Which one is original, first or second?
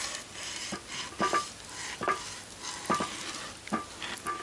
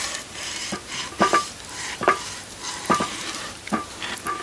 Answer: first